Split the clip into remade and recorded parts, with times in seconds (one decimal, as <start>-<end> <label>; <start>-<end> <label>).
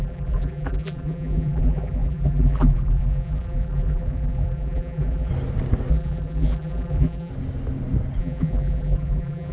0.0-5.3 remade; 5.3-5.9 recorded; 5.9-7.3 remade; 7.3-8.2 recorded; 8.2-9.5 remade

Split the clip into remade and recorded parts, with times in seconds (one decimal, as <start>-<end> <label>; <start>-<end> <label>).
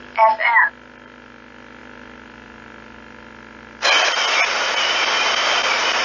0.0-6.0 recorded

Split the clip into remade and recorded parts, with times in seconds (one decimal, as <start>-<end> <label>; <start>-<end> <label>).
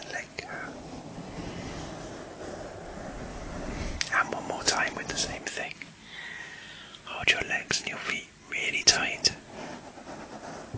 0.0-3.3 recorded; 3.3-3.9 remade; 3.9-10.8 recorded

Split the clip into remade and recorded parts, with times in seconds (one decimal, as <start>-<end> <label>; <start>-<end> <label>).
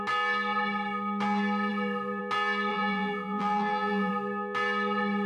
0.0-2.7 recorded; 2.7-4.1 remade; 4.1-5.3 recorded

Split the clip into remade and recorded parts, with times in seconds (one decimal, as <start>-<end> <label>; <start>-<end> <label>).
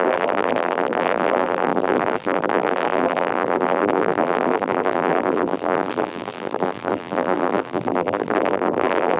0.0-9.2 remade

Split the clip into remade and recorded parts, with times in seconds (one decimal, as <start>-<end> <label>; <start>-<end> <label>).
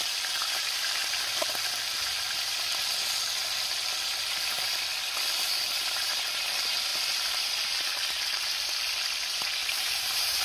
0.0-0.4 recorded; 0.4-1.0 remade; 1.0-5.8 recorded; 5.8-6.5 remade; 6.5-9.6 recorded; 9.6-10.4 remade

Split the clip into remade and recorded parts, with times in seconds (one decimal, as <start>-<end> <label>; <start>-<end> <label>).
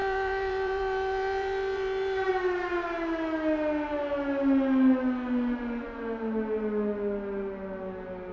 0.0-2.3 remade; 2.3-8.3 recorded